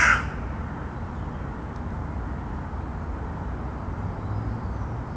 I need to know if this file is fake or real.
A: real